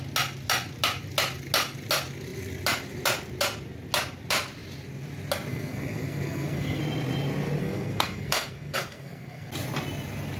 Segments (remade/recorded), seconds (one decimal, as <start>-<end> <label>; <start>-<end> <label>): 0.0-5.5 recorded; 5.5-6.8 remade; 6.8-7.6 recorded; 7.6-9.5 remade; 9.5-10.4 recorded